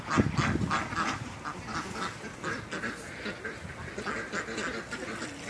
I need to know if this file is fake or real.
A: real